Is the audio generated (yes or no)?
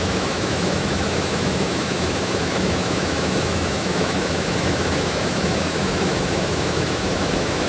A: yes